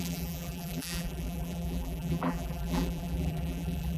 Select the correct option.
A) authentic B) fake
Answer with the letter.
B